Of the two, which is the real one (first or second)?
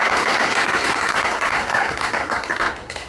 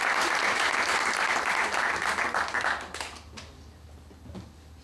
second